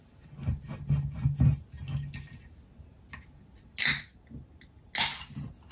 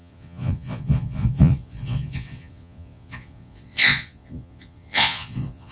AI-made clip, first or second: second